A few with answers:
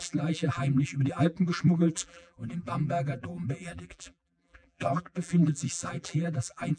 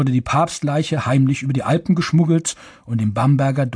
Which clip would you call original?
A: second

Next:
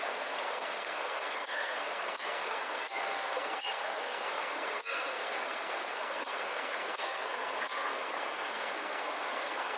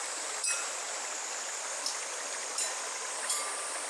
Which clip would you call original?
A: second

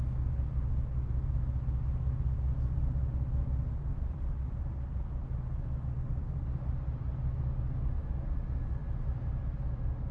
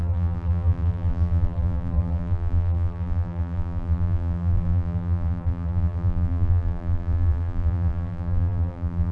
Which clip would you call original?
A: first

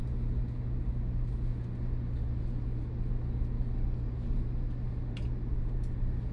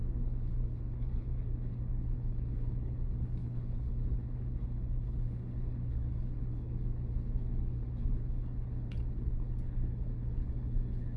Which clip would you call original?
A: first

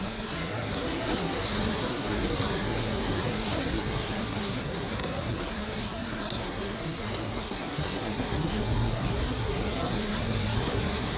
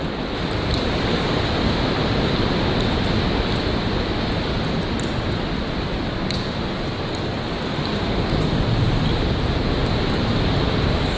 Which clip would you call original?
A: second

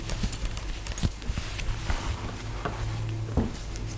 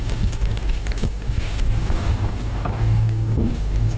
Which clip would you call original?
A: first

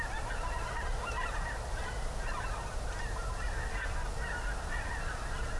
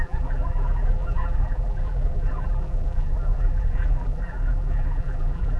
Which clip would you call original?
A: first